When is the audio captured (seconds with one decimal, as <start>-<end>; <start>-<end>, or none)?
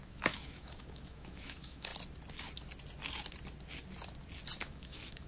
1.9-4.6